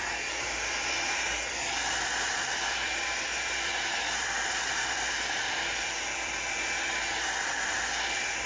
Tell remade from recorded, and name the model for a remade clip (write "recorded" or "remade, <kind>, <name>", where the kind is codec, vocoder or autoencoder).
remade, vocoder, BigVGAN v2